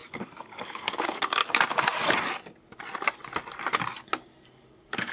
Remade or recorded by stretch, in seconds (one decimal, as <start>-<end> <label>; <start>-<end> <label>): 0.0-1.4 remade; 1.4-4.5 recorded; 4.5-5.1 remade